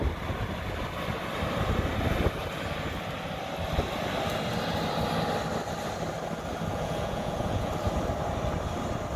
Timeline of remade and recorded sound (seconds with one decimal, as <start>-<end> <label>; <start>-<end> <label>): 0.0-6.7 recorded; 6.7-7.7 remade; 7.7-9.2 recorded